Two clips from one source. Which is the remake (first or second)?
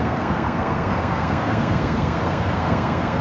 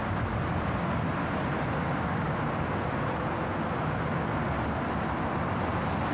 first